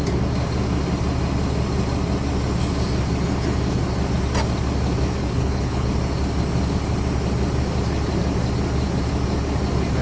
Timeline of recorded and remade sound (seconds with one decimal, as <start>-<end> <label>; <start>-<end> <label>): 0.0-5.2 recorded; 5.2-5.9 remade; 5.9-10.0 recorded